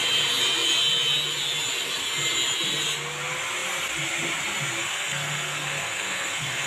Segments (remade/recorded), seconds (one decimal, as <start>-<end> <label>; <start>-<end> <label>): 0.0-4.8 recorded; 4.8-6.7 remade